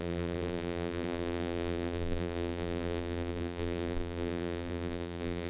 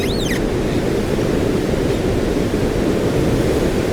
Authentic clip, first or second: second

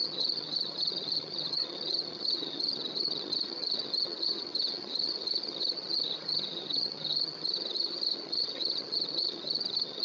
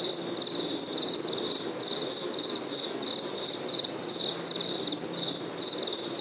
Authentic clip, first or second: second